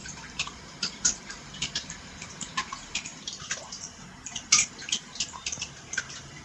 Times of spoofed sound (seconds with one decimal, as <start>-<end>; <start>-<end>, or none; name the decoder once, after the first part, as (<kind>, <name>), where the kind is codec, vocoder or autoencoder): 0.0-1.2 (vocoder, BigVGAN v2); 3.1-4.0